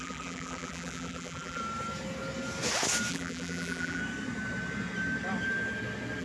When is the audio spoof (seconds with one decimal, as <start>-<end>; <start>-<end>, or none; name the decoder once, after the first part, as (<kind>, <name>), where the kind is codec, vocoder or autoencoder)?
0.0-1.6 (vocoder, BigVGAN v2); 3.1-4.0